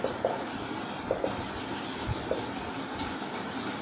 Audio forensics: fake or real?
fake